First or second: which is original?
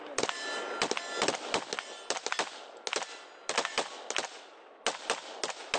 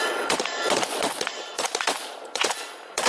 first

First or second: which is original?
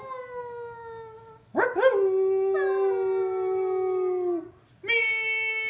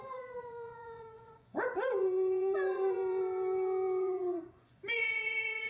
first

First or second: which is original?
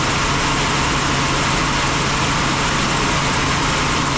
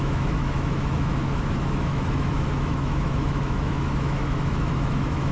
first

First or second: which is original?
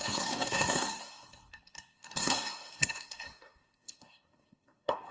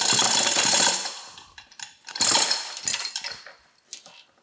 second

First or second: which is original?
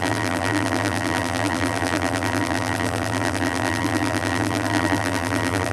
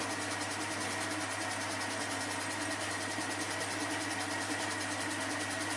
second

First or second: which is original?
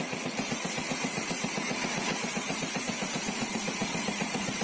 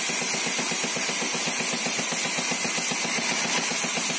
second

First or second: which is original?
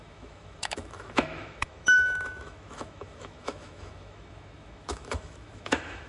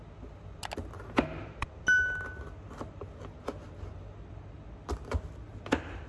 second